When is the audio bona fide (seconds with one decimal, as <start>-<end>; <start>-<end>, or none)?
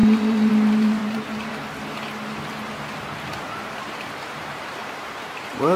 0.0-1.0; 1.5-3.4